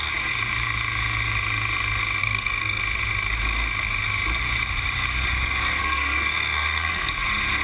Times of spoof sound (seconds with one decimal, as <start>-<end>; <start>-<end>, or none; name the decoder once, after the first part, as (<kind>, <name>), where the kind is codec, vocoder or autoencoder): 2.2-2.8 (codec, SNAC); 5.8-7.1